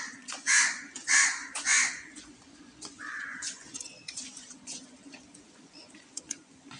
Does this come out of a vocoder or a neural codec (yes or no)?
yes